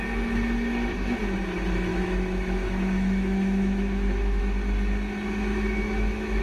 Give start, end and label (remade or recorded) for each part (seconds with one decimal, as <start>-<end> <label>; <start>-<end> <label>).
0.0-1.9 recorded; 1.9-4.4 remade; 4.4-5.5 recorded; 5.5-6.4 remade

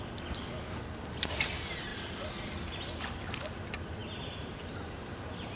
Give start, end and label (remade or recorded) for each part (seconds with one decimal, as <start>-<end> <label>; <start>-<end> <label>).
0.0-5.6 recorded

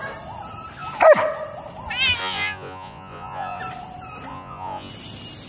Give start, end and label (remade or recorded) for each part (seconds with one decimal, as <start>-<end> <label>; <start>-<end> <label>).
0.0-2.2 recorded; 2.2-3.6 remade; 3.6-4.3 recorded; 4.3-4.9 remade; 4.9-5.5 recorded

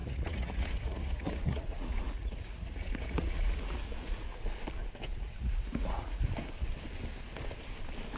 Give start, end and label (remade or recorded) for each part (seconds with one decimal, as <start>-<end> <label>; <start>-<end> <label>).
0.0-4.3 remade; 4.3-5.1 recorded; 5.1-6.2 remade; 6.2-8.2 recorded

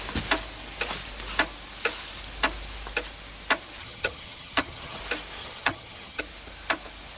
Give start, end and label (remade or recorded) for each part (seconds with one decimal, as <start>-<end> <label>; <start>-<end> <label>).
0.0-3.8 recorded; 3.8-5.0 remade; 5.0-5.4 recorded; 5.4-6.2 remade; 6.2-7.2 recorded

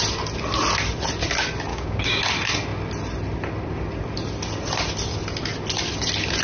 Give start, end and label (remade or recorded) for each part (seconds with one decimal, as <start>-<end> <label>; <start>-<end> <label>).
0.0-1.7 recorded; 1.7-2.2 remade; 2.2-6.4 recorded

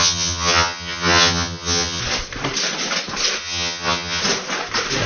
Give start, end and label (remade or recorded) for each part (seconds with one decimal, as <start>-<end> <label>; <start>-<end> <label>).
0.0-2.0 remade; 2.0-3.4 recorded; 3.4-4.2 remade; 4.2-5.1 recorded

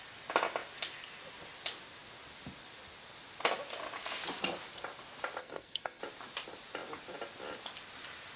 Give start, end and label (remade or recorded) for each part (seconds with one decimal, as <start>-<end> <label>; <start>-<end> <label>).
0.0-5.4 recorded; 5.4-6.0 remade; 6.0-8.4 recorded